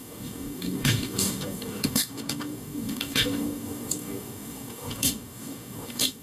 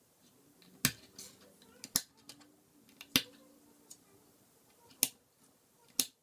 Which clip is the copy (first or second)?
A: first